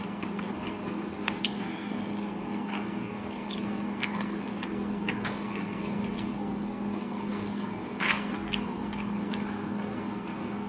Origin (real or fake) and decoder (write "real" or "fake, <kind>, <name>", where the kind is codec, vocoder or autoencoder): fake, codec, SNAC